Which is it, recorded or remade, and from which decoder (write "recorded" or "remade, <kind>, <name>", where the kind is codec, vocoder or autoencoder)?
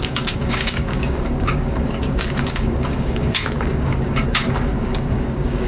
remade, codec, DAC